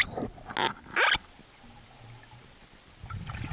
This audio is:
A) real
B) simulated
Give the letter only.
A